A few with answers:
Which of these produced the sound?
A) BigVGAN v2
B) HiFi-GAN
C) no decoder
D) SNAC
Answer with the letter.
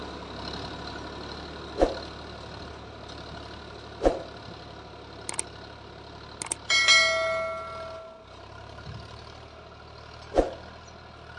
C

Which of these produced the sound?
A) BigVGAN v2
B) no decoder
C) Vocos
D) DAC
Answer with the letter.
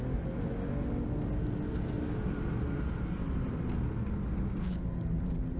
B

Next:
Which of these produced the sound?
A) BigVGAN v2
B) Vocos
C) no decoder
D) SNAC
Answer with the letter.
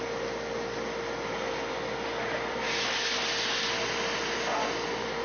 C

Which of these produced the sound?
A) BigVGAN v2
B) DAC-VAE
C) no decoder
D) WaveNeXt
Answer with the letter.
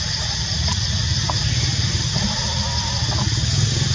C